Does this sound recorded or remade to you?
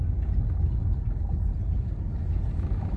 recorded